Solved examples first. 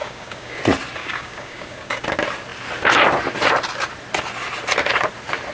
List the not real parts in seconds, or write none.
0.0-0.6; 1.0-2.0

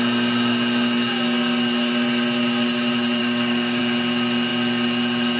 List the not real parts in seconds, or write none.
3.2-3.8

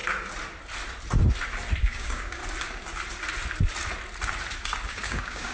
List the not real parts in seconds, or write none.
1.8-2.4; 4.9-5.5

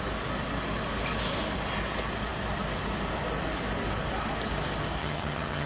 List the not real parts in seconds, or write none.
5.0-5.7

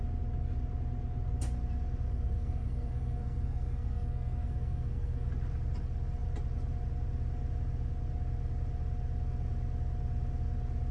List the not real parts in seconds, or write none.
2.1-5.3

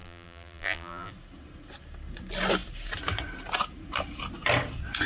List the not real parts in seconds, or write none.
0.0-1.1

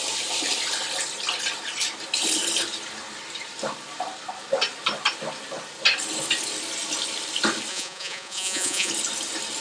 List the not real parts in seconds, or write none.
7.7-8.9

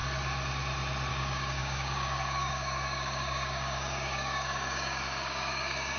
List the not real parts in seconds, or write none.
1.1-6.0